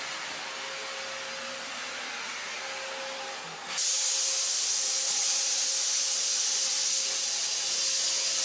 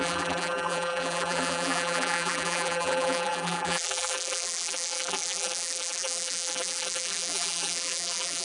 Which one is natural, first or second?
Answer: first